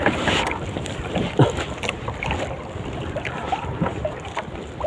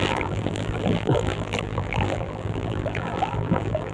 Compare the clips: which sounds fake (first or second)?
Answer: second